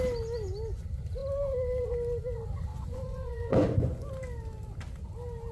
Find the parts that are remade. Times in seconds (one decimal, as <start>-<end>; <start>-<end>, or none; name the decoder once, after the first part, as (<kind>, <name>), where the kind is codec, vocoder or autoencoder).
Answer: 2.7-4.1 (vocoder, Vocos)